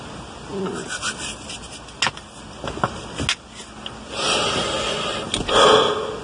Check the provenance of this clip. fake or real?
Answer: real